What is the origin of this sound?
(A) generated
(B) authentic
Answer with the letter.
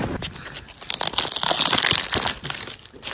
B